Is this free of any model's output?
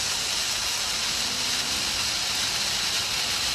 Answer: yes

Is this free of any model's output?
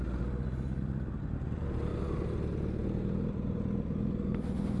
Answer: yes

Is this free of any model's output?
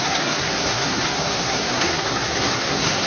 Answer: no